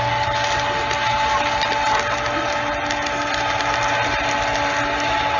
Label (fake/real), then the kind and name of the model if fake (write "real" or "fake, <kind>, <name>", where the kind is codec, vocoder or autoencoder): real